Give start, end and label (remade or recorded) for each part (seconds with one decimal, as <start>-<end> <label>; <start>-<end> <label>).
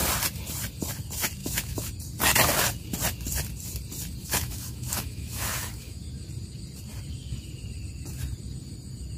0.0-1.4 recorded; 1.4-1.9 remade; 1.9-4.2 recorded; 4.2-6.0 remade; 6.0-9.2 recorded